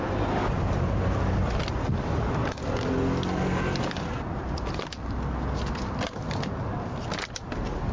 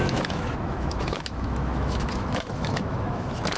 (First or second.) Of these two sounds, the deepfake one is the second